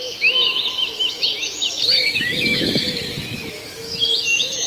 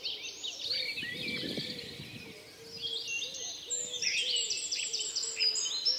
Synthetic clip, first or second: first